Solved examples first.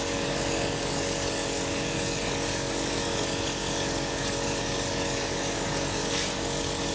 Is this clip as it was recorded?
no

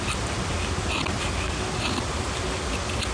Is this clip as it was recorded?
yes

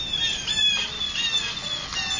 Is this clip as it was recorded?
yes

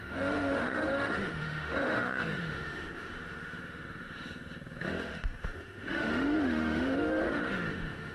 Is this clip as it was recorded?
no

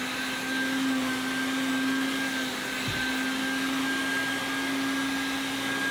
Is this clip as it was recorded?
yes